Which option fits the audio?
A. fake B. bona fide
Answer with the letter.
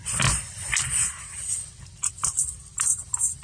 A